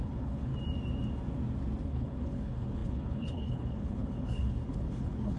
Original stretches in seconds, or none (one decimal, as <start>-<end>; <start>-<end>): 0.5-1.8